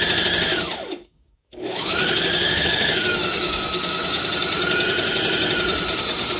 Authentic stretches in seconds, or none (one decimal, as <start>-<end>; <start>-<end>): 0.0-0.5; 4.3-6.4